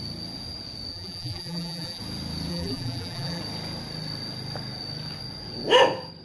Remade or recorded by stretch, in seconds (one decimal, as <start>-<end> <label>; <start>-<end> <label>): 0.0-0.9 recorded; 0.9-2.0 remade; 2.0-2.5 recorded; 2.5-3.4 remade; 3.4-6.2 recorded